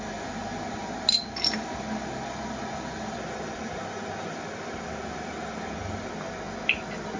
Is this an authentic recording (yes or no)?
yes